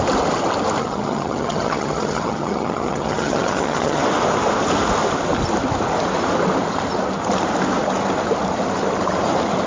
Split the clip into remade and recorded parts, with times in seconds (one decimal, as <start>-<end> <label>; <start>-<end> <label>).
0.0-0.8 recorded; 0.8-4.0 remade; 4.0-9.7 recorded

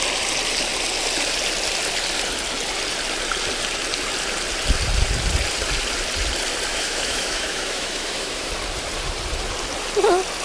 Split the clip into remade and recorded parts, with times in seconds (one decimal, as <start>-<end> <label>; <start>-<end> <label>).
0.0-6.7 recorded; 6.7-8.5 remade; 8.5-10.4 recorded